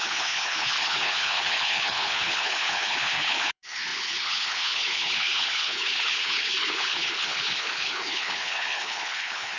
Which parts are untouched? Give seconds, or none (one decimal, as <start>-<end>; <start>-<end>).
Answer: none